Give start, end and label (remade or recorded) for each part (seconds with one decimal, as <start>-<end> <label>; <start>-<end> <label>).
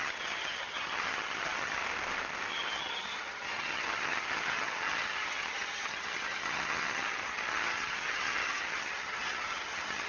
0.0-1.8 remade; 1.8-2.5 recorded; 2.5-10.1 remade